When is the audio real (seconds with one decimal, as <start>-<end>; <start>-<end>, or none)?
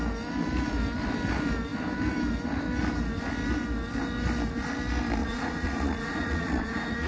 0.0-5.2